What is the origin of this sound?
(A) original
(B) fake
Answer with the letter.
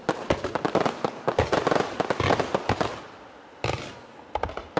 A